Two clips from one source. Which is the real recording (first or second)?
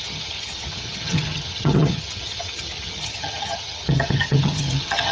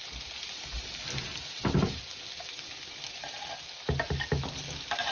second